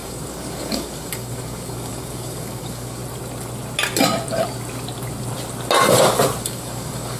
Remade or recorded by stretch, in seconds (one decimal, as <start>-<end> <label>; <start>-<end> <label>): 0.0-3.0 remade; 3.0-6.4 recorded; 6.4-7.2 remade